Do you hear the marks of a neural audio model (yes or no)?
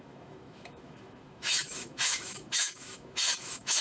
yes